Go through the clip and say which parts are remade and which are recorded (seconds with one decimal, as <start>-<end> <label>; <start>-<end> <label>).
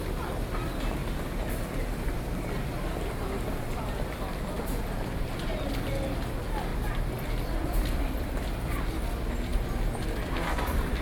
0.0-6.7 recorded; 6.7-8.4 remade; 8.4-11.0 recorded